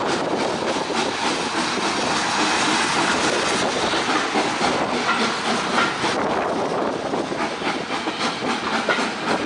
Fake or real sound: real